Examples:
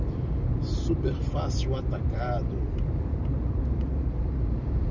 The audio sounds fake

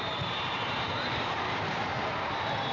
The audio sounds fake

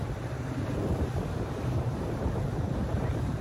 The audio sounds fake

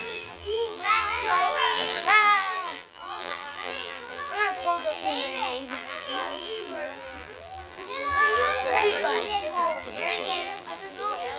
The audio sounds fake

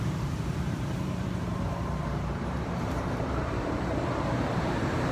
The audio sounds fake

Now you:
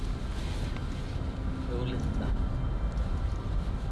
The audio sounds real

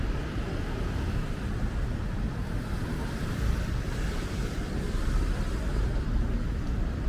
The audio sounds fake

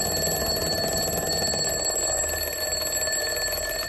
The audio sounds fake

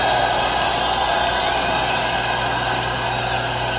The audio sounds real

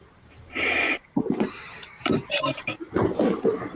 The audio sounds fake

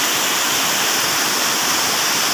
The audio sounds fake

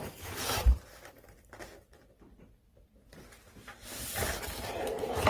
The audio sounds real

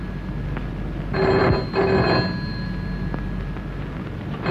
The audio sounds real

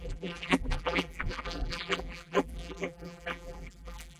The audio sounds fake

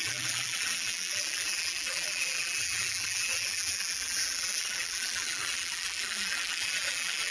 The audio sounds fake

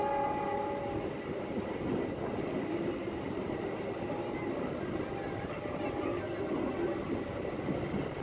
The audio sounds real